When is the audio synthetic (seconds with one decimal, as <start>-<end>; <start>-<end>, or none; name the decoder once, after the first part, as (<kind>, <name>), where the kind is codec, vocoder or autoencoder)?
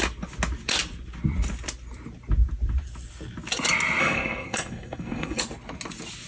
4.0-5.4 (codec, SNAC)